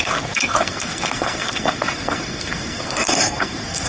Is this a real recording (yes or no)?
no